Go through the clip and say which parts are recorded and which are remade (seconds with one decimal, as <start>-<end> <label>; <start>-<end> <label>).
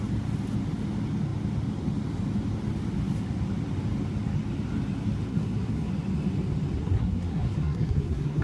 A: 0.0-5.3 recorded; 5.3-5.9 remade; 5.9-6.8 recorded; 6.8-8.4 remade